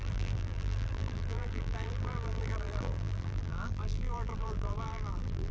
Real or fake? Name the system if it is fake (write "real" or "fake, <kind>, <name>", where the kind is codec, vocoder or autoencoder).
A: fake, vocoder, BigVGAN v2